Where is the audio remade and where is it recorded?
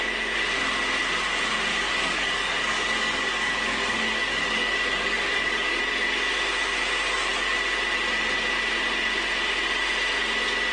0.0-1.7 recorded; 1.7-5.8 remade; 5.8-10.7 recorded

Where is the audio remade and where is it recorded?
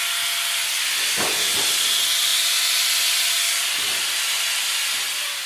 0.0-5.5 recorded